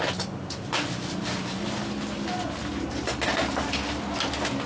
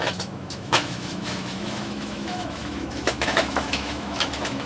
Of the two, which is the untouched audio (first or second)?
first